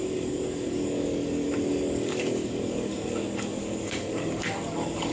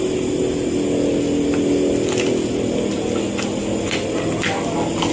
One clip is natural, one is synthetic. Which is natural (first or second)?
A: second